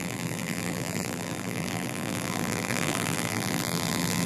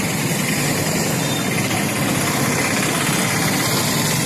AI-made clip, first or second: first